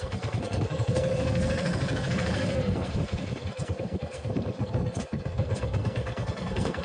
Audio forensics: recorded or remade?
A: remade